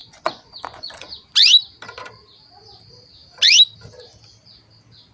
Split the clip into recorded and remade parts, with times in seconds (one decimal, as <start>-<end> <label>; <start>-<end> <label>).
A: 0.0-1.3 remade; 1.3-5.1 recorded